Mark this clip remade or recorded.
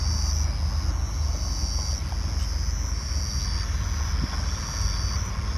recorded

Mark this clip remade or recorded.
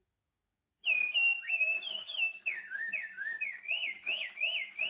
remade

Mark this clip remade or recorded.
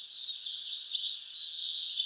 recorded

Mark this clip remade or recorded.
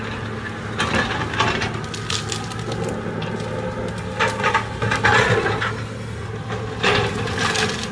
recorded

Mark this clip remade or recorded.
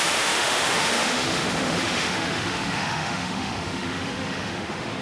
remade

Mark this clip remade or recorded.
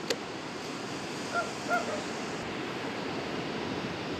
recorded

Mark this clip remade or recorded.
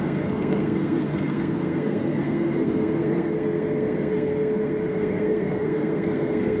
remade